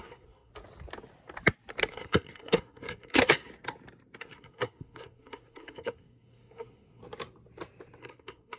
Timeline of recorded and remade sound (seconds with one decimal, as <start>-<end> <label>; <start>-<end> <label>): 0.0-0.5 remade; 0.5-1.9 recorded; 1.9-3.5 remade; 3.5-4.2 recorded; 4.2-7.0 remade; 7.0-8.0 recorded; 8.0-8.6 remade